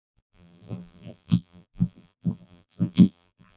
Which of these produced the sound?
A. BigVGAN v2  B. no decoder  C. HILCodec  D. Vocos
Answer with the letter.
A